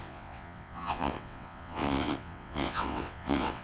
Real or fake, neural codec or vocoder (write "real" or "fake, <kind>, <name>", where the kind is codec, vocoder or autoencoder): fake, vocoder, WaveNeXt